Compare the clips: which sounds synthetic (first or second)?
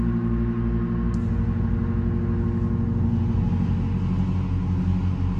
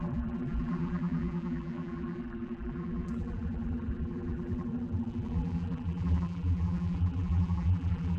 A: second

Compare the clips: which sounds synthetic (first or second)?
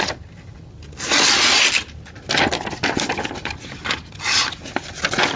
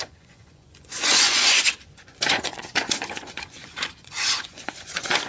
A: second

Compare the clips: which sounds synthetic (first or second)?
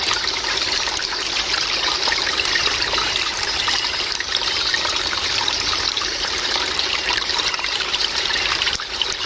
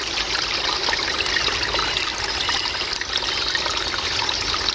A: first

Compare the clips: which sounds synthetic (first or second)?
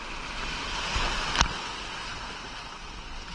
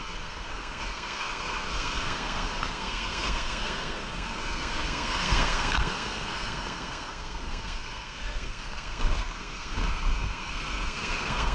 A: second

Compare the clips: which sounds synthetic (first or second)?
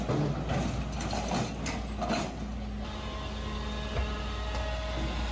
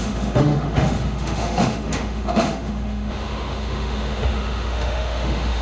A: second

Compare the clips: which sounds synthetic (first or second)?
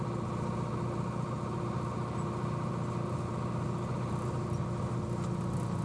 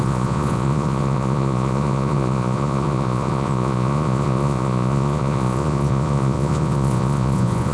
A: second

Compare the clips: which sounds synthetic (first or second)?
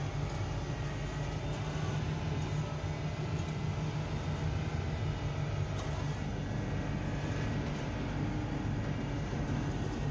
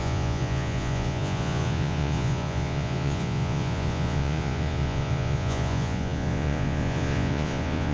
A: second